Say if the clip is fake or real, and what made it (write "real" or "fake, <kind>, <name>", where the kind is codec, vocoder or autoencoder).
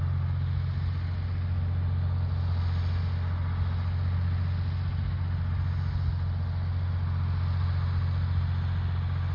real